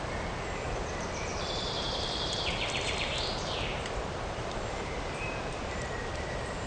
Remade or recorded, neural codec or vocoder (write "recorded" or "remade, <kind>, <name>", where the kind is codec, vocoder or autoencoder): remade, vocoder, BigVGAN v2